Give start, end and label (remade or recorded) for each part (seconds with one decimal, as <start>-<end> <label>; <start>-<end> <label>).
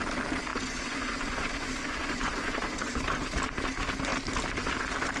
0.0-0.5 recorded; 0.5-3.0 remade; 3.0-5.2 recorded